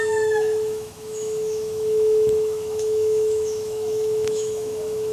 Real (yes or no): no